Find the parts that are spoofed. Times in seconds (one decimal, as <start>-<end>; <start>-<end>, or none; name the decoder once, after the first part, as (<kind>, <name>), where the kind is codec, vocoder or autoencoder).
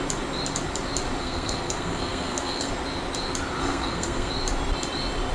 1.2-2.7 (codec, SNAC); 3.6-4.3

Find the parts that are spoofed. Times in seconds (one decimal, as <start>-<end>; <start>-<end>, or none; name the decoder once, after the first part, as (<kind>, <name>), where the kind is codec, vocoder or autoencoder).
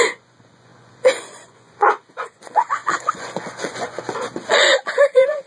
0.0-5.5 (vocoder, Vocos)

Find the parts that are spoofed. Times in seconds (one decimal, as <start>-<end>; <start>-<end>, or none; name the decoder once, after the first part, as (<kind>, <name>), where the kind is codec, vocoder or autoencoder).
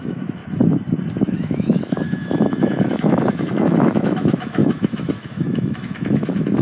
0.0-0.4 (autoencoder, DAC-VAE); 1.2-6.6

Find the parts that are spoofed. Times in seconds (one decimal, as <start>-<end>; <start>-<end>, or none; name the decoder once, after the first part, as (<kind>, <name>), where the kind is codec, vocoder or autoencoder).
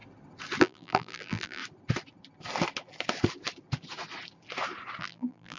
0.6-1.6 (vocoder, BigVGAN v2); 5.0-5.6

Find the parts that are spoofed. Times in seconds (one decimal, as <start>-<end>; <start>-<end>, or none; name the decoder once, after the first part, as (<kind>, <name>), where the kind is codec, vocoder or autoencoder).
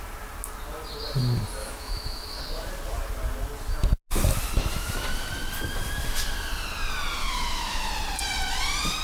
1.6-2.4 (autoencoder, DAC-VAE); 7.2-7.9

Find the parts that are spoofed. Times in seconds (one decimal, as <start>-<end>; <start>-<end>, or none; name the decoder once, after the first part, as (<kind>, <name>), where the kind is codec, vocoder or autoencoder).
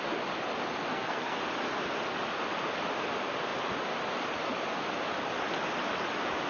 0.9-1.4 (codec, SNAC)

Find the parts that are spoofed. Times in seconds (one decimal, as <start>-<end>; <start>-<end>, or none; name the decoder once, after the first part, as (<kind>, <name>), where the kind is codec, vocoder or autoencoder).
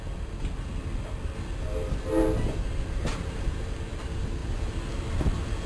none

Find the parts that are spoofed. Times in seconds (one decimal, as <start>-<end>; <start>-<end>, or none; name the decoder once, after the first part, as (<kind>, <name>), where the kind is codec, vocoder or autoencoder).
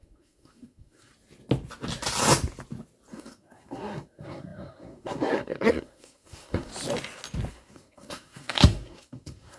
0.0-1.1 (codec, SNAC); 3.1-6.7; 7.5-9.6